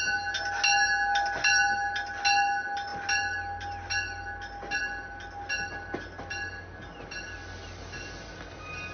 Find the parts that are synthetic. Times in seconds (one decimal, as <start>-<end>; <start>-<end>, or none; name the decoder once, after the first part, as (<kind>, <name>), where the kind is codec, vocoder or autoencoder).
none